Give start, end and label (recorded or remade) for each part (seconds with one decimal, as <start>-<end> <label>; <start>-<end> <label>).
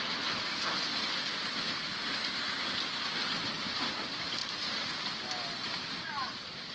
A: 0.0-4.4 recorded; 4.4-5.0 remade; 5.0-6.7 recorded